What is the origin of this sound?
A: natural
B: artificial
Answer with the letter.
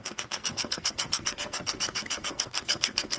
B